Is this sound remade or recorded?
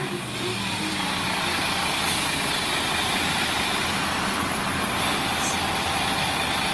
recorded